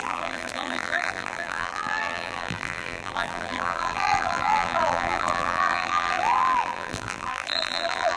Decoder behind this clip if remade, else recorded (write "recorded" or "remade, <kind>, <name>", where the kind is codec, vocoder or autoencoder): remade, vocoder, BigVGAN v2